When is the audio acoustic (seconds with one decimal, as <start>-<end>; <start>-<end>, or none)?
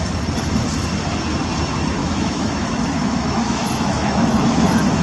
0.0-2.0